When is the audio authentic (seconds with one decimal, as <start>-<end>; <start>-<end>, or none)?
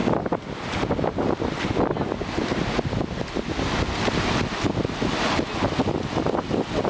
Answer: 0.0-6.9